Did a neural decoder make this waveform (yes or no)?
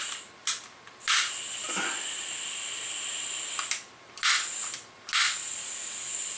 no